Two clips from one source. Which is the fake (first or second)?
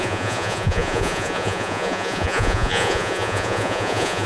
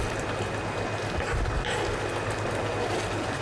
first